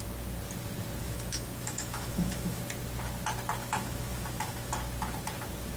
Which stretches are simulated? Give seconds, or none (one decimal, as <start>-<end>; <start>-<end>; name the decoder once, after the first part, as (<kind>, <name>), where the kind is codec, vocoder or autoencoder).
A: 1.0-2.6 (autoencoder, DAC-VAE); 3.6-4.7